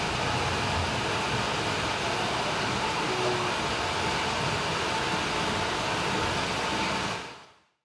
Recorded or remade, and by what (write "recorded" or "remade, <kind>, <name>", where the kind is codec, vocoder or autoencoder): recorded